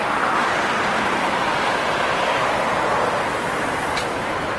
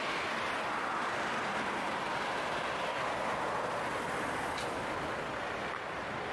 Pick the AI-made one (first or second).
first